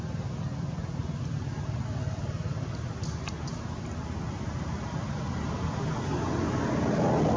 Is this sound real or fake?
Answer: real